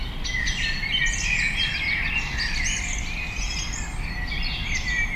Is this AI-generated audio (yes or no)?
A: no